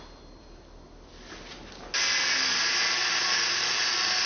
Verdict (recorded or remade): recorded